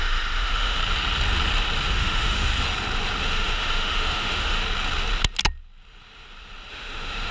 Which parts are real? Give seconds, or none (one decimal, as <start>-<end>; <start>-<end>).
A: 0.8-1.9; 2.5-3.2; 4.6-6.7